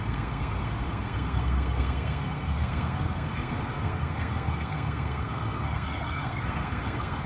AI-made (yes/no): yes